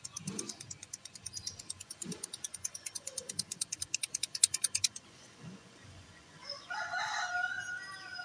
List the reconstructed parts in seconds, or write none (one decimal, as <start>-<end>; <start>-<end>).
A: 0.0-7.1